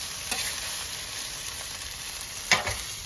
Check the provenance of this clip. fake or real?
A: fake